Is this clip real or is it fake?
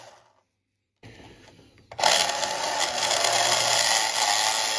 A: real